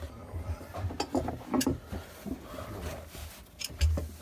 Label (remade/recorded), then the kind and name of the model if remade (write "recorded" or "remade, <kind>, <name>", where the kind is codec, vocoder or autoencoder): recorded